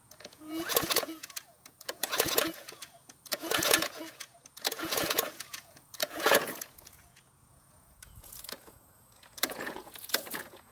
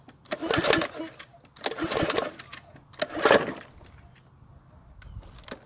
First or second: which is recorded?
second